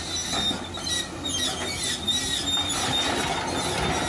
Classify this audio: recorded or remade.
recorded